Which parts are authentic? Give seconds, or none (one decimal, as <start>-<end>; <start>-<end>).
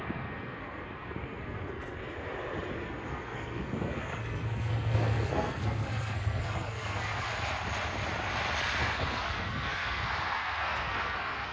2.0-3.1; 7.3-8.8